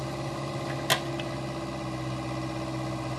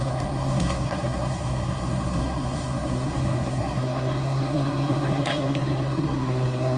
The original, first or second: first